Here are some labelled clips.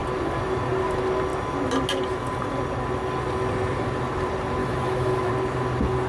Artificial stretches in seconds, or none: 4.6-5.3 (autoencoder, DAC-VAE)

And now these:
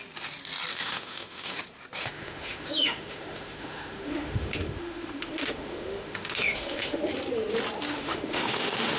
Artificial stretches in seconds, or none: 0.7-1.6 (autoencoder, DAC-VAE); 2.0-7.0; 7.9-9.0

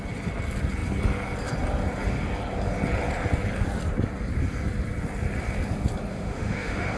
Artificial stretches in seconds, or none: 6.1-7.0 (autoencoder, DAC-VAE)

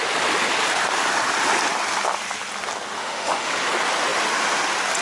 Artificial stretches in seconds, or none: 3.0-3.5 (autoencoder, DAC-VAE)